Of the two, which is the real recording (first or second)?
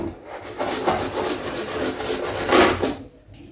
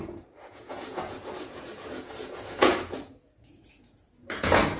first